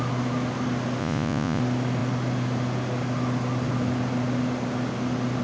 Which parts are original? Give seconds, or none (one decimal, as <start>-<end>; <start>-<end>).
0.0-1.0; 1.6-5.4